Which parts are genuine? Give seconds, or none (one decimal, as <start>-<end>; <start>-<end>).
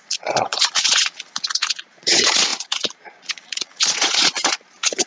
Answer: none